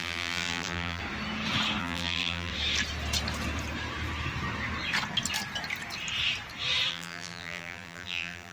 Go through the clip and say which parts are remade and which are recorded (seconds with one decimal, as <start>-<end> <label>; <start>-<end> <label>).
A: 0.0-1.0 remade; 1.0-1.8 recorded; 1.8-2.5 remade; 2.5-6.9 recorded; 6.9-8.5 remade